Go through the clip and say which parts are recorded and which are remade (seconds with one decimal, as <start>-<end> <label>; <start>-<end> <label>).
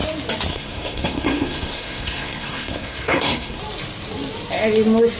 0.0-0.5 recorded; 0.5-3.6 remade; 3.6-5.2 recorded